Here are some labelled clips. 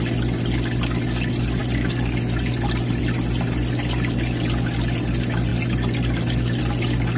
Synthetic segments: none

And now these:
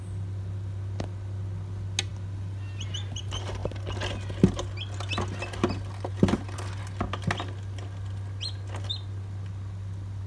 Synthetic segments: none